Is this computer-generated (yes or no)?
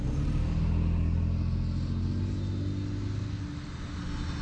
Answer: no